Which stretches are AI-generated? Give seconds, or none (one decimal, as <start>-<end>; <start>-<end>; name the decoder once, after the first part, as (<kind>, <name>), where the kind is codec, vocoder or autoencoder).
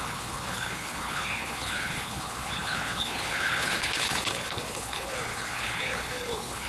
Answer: 0.0-6.7 (codec, HILCodec)